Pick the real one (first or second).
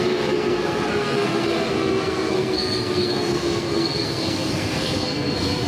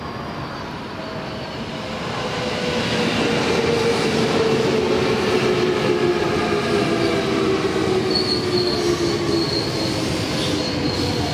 second